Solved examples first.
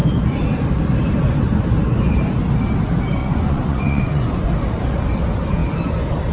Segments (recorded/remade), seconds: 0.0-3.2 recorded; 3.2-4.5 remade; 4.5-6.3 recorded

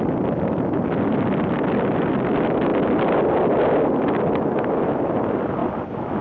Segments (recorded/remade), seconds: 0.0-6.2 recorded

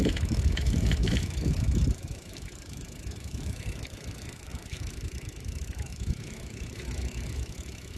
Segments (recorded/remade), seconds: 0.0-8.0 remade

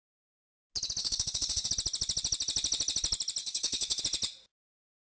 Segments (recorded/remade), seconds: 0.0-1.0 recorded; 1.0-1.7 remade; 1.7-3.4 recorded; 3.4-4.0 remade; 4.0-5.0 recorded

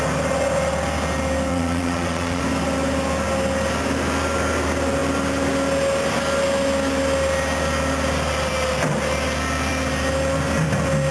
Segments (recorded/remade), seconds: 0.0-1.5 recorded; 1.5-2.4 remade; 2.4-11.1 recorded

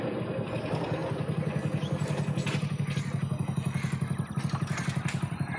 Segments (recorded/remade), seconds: 0.0-1.0 remade; 1.0-4.4 recorded; 4.4-5.6 remade

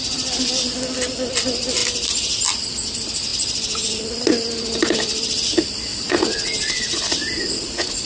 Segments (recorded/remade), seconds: 0.0-5.9 recorded; 5.9-8.1 remade